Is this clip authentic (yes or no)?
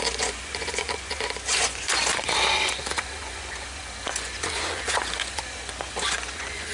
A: no